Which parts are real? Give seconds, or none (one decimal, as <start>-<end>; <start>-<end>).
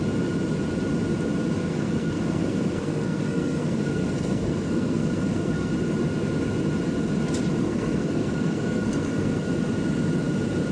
0.0-1.7; 5.7-7.5; 9.5-10.7